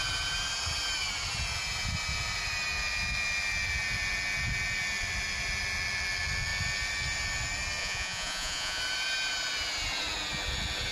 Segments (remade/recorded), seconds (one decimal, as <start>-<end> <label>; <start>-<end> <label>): 0.0-7.8 recorded; 7.8-8.8 remade; 8.8-10.9 recorded